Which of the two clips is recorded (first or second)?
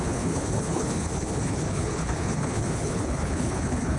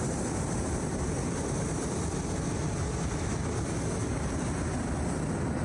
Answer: second